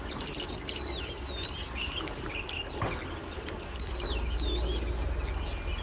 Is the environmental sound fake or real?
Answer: real